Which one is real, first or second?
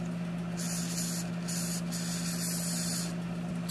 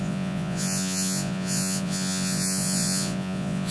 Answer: first